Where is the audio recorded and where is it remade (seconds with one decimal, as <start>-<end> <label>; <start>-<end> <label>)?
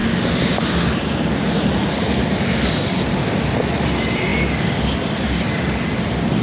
0.0-6.4 recorded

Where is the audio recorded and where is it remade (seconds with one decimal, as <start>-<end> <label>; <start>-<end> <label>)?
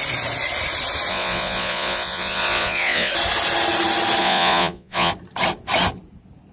0.0-1.1 recorded; 1.1-3.1 remade; 3.1-4.2 recorded; 4.2-5.1 remade; 5.1-6.5 recorded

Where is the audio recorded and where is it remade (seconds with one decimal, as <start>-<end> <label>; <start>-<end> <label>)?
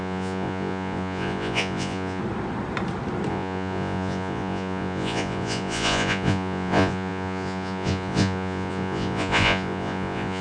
0.0-2.2 remade; 2.2-3.3 recorded; 3.3-10.4 remade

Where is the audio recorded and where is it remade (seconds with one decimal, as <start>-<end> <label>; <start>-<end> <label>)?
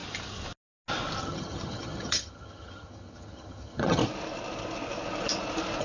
0.0-1.2 recorded; 1.2-4.0 remade; 4.0-5.8 recorded